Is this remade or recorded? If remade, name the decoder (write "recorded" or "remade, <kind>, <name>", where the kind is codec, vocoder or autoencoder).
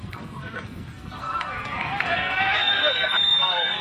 remade, codec, SNAC